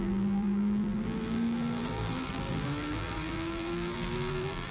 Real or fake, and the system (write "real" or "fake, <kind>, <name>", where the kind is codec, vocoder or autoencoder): fake, vocoder, BigVGAN v2